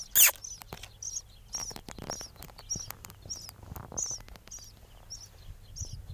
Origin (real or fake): real